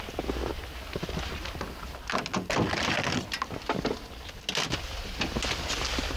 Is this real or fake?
real